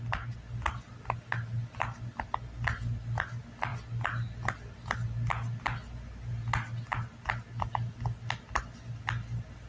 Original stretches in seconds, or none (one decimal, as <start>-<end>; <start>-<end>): 0.0-9.7